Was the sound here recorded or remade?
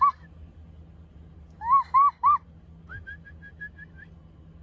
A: recorded